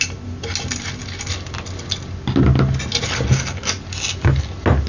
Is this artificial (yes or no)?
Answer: no